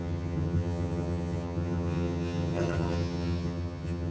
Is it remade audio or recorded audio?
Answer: remade